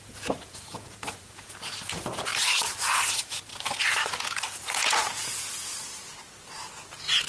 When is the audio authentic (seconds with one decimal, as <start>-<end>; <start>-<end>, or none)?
2.3-3.1; 3.5-4.2; 5.7-7.3